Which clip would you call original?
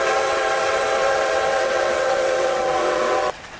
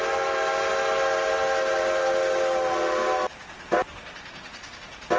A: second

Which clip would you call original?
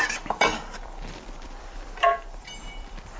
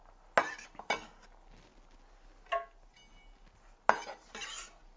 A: second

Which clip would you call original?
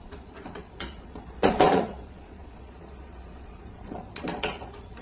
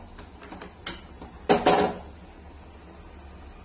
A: second